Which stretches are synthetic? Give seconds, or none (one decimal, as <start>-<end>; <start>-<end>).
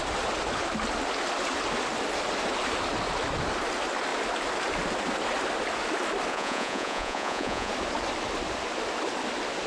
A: 6.3-7.7